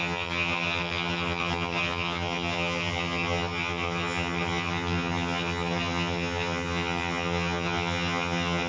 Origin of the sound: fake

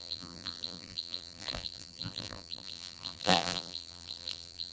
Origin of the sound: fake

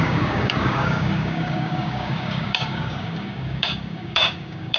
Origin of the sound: fake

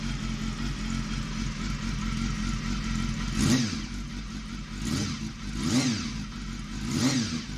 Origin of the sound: real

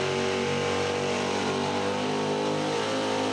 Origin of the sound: real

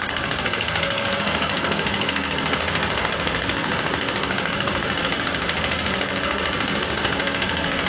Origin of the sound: fake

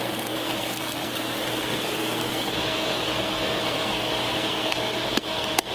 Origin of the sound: fake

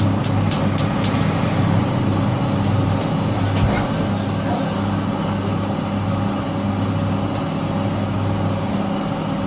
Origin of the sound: real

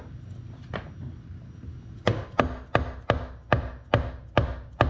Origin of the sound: real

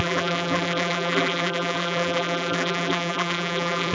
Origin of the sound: fake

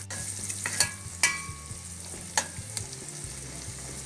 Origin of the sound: real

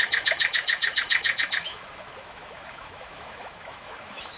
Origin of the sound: fake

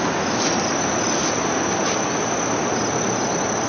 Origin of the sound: real